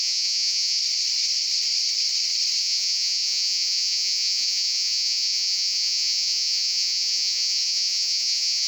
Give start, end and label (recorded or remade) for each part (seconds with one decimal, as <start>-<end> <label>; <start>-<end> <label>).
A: 0.0-0.8 remade; 0.8-2.6 recorded; 2.6-8.7 remade

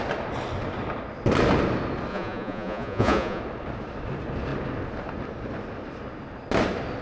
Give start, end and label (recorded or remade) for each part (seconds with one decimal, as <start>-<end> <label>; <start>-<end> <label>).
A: 0.0-2.1 recorded; 2.1-3.4 remade; 3.4-7.0 recorded

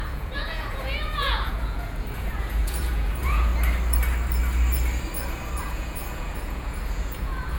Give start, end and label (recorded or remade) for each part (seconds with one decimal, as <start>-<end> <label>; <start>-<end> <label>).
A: 0.0-3.5 remade; 3.5-5.6 recorded; 5.6-7.6 remade